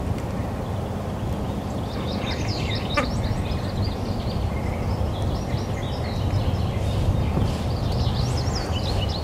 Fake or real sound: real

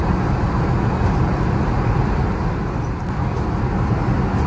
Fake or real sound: real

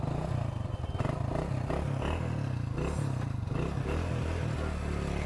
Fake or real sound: real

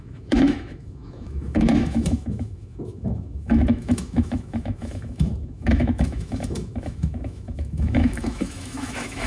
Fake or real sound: fake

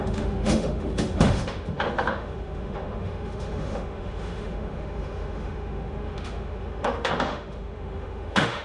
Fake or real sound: fake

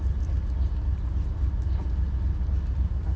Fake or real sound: real